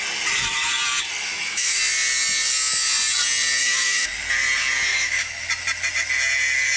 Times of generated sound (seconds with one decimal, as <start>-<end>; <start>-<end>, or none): 1.3-1.8; 3.6-4.1; 4.9-5.4